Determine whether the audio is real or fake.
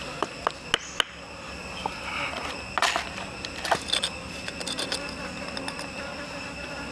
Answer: real